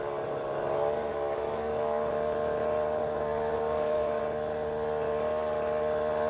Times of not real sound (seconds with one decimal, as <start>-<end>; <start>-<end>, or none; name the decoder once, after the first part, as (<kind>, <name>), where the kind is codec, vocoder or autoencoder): 1.1-2.1 (codec, DAC); 3.0-4.2